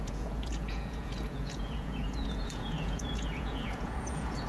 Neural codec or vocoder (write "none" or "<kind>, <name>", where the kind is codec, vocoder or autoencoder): vocoder, Vocos